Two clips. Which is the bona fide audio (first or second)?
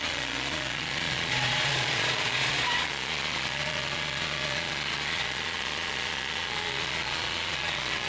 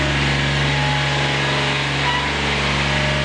second